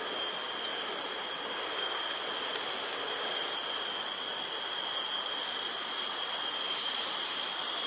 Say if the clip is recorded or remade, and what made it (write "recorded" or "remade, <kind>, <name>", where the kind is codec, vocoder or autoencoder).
recorded